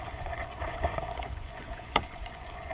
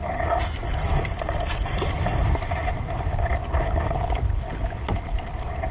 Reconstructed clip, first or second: first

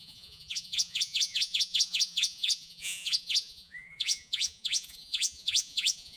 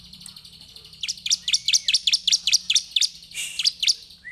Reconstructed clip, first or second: first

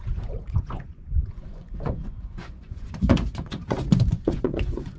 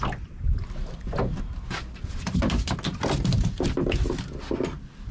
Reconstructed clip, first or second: first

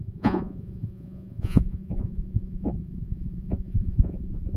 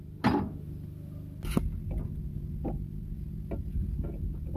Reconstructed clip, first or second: first